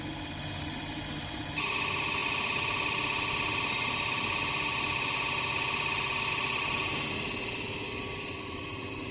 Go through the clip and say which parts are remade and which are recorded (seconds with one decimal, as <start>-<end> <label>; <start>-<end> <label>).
0.0-9.1 recorded

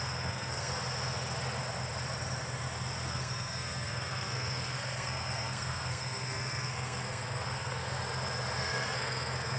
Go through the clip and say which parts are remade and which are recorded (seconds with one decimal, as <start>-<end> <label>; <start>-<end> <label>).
0.0-0.7 remade; 0.7-3.1 recorded; 3.1-8.0 remade; 8.0-8.6 recorded; 8.6-9.6 remade